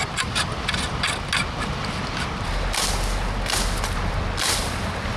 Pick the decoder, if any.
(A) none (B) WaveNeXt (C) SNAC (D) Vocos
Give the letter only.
A